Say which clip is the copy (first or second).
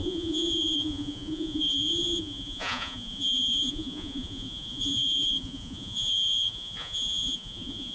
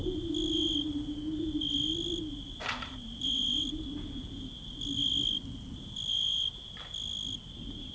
first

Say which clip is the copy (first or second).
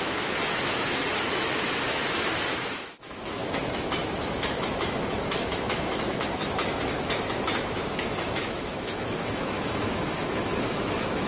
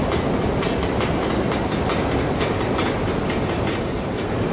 first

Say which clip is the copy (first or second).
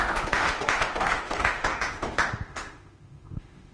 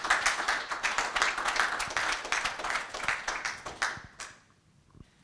first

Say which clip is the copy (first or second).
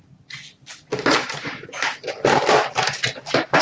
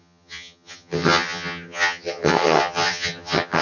second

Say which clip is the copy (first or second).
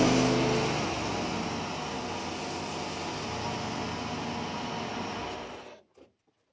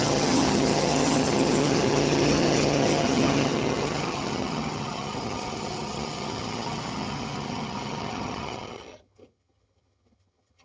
second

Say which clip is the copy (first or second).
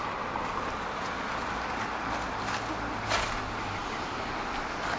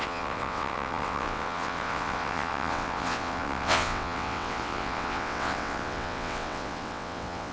second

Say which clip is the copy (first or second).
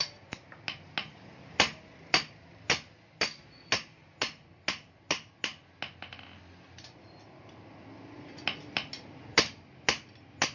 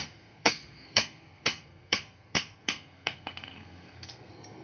second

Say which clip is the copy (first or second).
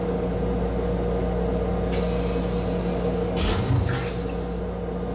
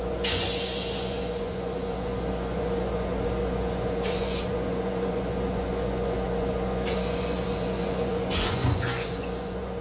second